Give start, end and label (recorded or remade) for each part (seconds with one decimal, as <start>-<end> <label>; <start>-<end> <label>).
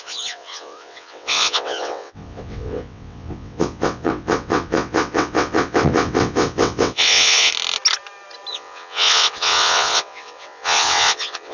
0.0-7.5 remade; 7.5-8.5 recorded; 8.5-11.5 remade